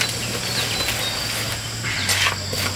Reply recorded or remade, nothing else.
recorded